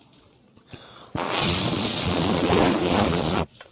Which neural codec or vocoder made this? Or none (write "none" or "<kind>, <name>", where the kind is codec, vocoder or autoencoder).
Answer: vocoder, Vocos